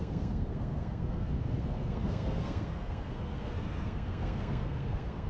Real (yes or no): no